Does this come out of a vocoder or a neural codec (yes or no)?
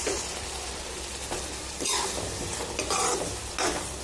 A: no